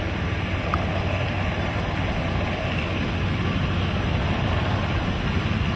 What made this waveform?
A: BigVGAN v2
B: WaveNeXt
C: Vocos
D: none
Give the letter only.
D